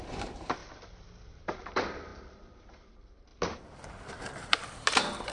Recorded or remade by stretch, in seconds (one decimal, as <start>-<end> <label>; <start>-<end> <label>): 0.0-0.6 remade; 0.6-1.3 recorded; 1.3-5.3 remade